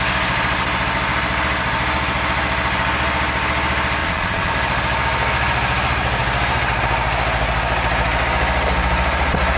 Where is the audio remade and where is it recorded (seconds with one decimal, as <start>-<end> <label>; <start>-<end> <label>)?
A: 0.0-4.0 recorded; 4.0-4.5 remade; 4.5-9.6 recorded